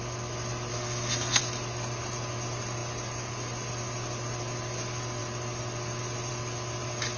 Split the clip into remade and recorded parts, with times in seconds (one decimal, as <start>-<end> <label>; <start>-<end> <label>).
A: 0.0-0.7 recorded; 0.7-1.4 remade; 1.4-7.2 recorded